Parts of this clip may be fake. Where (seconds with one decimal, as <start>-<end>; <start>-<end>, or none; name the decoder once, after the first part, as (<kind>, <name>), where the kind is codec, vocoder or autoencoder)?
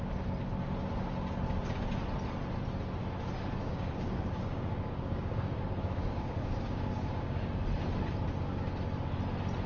3.6-7.5 (codec, DAC)